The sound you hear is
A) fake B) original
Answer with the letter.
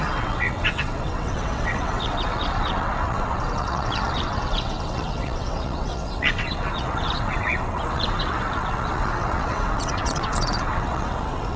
A